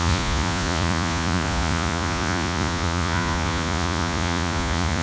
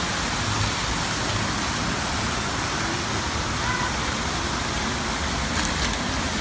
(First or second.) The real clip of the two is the second